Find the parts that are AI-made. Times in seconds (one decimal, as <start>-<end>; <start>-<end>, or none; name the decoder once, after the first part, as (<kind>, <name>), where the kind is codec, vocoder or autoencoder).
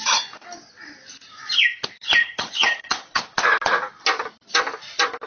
2.2-3.2 (vocoder, HiFi-GAN)